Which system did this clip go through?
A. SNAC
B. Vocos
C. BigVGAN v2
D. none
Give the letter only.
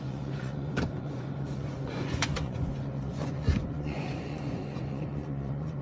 B